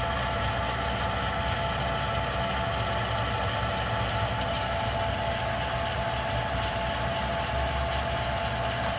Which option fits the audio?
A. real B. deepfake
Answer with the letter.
A